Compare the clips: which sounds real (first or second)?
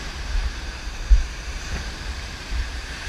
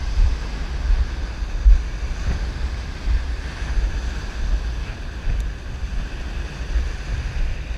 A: second